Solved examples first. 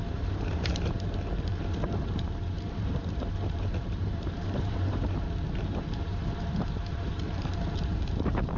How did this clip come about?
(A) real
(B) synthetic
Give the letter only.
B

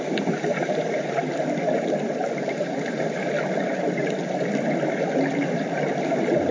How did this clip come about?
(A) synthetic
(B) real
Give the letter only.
B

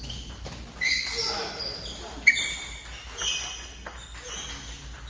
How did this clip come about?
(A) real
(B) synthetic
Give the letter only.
A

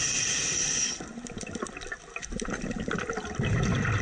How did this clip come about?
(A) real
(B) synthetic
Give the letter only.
A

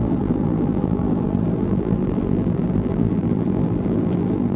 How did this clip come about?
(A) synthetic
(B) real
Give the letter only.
A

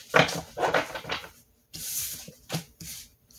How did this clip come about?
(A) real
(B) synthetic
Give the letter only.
B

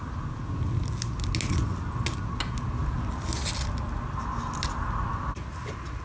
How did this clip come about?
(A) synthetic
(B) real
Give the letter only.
B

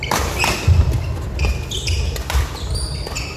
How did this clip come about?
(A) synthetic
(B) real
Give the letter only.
B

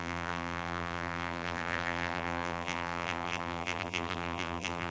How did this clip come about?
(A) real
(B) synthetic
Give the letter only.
B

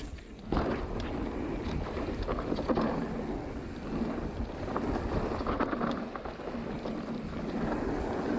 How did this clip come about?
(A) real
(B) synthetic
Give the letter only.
A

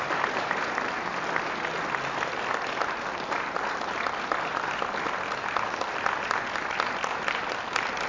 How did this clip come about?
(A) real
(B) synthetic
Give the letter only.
A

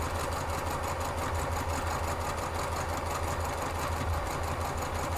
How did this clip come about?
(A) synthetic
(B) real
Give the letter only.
B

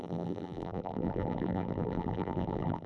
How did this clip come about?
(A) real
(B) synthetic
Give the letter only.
B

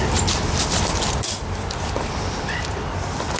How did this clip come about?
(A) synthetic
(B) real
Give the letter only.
A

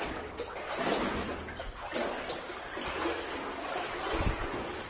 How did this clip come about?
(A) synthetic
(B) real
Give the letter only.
B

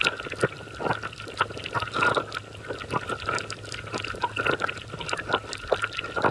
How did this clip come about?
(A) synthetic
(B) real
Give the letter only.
B